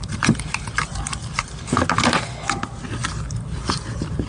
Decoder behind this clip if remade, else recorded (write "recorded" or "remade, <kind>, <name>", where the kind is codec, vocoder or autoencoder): recorded